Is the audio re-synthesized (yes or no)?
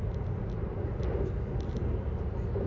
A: no